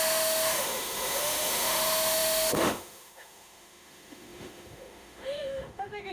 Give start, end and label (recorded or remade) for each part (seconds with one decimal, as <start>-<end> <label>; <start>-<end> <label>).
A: 0.0-6.1 remade